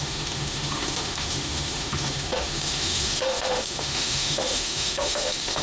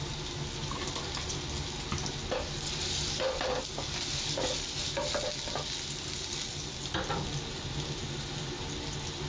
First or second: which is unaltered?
second